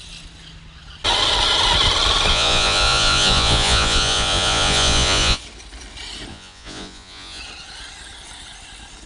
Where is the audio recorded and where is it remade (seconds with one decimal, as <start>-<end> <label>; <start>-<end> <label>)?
0.0-2.3 recorded; 2.3-5.4 remade; 5.4-6.3 recorded; 6.3-7.4 remade; 7.4-9.1 recorded